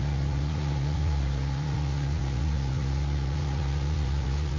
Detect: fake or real fake